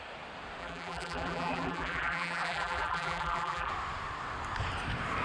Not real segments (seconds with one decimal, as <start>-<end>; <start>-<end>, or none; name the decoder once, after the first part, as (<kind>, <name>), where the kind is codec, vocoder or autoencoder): 0.6-3.7 (vocoder, BigVGAN v2)